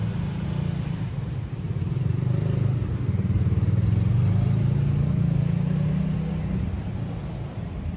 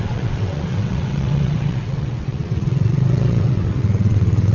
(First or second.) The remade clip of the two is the second